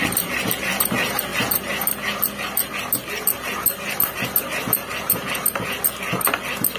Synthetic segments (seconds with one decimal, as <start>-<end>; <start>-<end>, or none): none